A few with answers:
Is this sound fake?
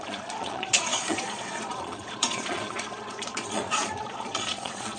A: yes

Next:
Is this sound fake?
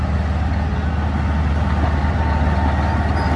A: no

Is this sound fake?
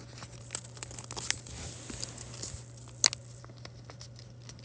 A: no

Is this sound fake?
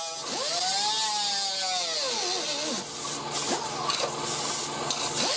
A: no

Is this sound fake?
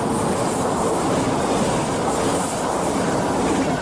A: no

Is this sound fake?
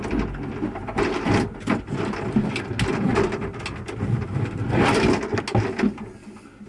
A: no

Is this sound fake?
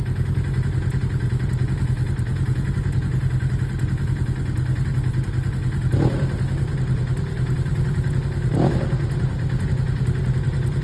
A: no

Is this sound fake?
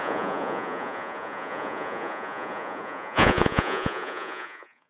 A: yes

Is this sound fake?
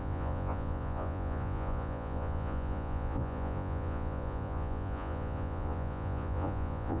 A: yes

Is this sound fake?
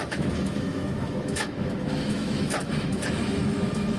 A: yes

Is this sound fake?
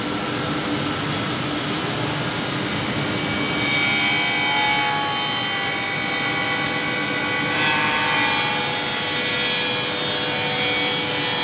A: no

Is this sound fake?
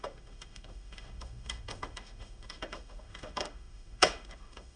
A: yes